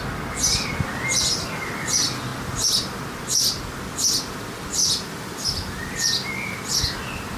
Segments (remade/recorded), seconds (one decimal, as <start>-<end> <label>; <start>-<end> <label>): 0.0-7.4 recorded